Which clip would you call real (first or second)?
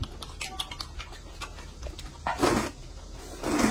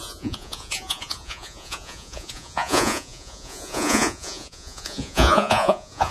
first